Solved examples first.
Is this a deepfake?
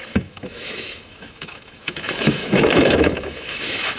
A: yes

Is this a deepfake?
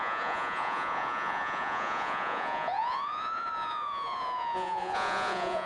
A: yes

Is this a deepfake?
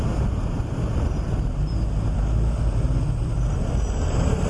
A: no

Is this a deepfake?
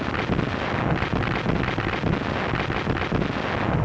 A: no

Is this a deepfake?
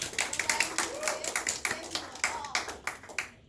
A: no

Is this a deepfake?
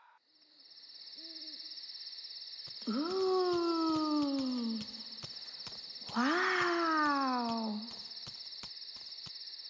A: no